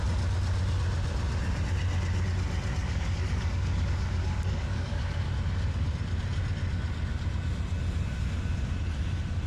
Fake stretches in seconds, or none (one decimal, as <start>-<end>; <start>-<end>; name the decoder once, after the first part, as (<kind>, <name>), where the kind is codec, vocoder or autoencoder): 2.8-5.2 (codec, DAC)